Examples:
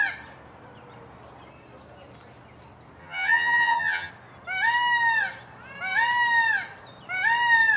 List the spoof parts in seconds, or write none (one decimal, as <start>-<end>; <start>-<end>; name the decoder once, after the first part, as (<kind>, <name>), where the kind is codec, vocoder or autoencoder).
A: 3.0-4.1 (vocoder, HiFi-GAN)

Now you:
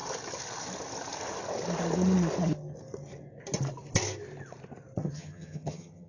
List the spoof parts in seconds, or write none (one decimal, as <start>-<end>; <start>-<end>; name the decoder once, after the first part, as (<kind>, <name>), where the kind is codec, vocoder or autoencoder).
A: 5.0-6.1 (vocoder, HiFi-GAN)

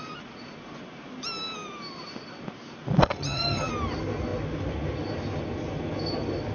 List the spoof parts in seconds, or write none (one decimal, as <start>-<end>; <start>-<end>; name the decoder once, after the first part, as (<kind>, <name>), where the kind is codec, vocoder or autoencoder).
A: 3.0-3.7 (vocoder, HiFi-GAN)

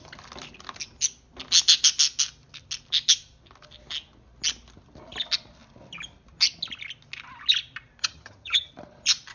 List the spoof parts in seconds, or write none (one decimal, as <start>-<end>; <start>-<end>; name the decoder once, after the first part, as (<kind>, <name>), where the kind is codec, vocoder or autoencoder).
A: 8.0-8.7 (vocoder, HiFi-GAN)